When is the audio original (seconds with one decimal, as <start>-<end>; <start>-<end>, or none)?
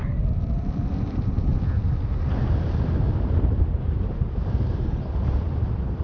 0.0-0.9; 1.5-3.6